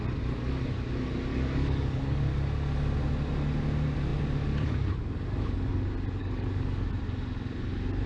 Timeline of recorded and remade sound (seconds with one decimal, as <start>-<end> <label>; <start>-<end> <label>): 0.0-1.3 recorded; 1.3-2.3 remade; 2.3-6.2 recorded; 6.2-6.9 remade; 6.9-8.1 recorded